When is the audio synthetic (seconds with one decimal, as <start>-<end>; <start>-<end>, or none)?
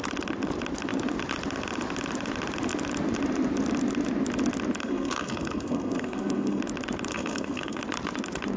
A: 4.8-6.6; 7.1-7.8